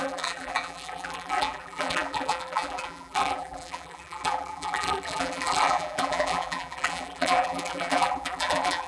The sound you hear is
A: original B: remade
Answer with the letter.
B